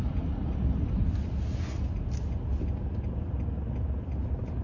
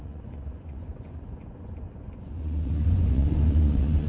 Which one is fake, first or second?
second